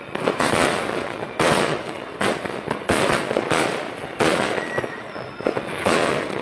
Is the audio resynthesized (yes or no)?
yes